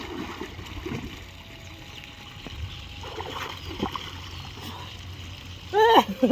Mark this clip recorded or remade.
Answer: recorded